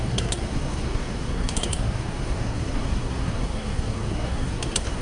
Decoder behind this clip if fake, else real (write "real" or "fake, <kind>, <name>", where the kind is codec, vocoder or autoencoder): fake, codec, SNAC